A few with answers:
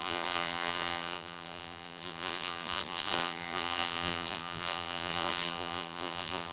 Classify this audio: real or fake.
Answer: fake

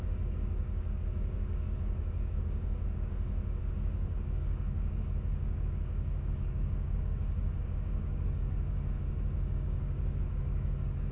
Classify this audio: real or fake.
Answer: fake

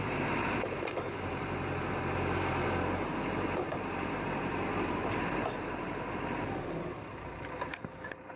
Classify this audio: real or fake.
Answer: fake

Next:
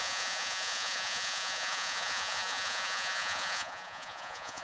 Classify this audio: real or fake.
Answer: fake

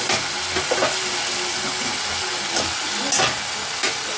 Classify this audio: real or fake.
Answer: real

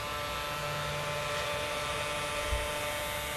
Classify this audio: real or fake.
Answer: real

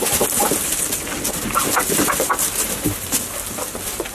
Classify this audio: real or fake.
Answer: real